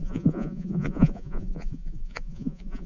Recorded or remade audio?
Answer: remade